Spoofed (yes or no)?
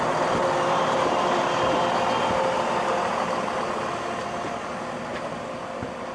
no